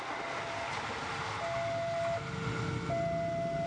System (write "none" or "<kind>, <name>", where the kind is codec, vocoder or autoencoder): none